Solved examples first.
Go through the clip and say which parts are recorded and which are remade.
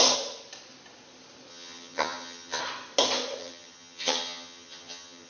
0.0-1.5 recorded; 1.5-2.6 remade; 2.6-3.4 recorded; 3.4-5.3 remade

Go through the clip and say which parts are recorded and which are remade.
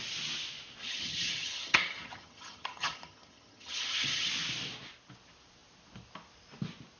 0.0-0.8 recorded; 0.8-4.3 remade; 4.3-7.0 recorded